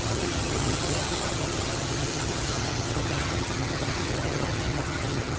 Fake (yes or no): yes